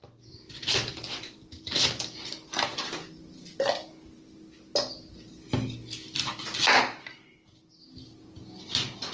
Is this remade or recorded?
recorded